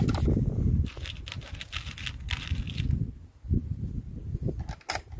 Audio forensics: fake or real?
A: real